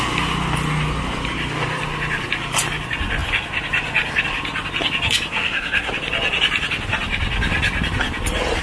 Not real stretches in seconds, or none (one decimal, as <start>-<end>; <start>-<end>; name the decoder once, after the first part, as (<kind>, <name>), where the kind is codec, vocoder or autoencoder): 5.3-5.9 (codec, SNAC)